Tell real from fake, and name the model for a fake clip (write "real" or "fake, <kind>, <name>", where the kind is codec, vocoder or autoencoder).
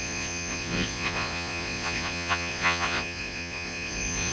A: fake, vocoder, Vocos